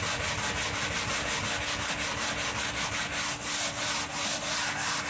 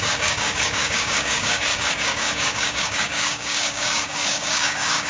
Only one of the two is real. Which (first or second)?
first